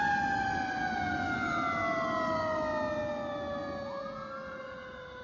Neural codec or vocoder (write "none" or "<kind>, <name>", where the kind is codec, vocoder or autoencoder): none